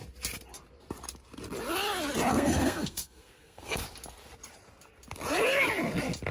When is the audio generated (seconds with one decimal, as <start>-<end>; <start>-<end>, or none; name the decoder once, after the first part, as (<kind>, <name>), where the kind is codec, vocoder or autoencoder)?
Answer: 2.3-3.8 (codec, SNAC)